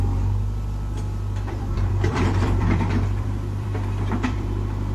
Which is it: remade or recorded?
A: remade